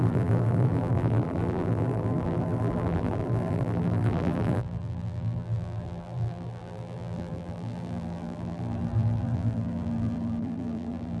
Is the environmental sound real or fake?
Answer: fake